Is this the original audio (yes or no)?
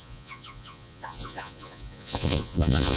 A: no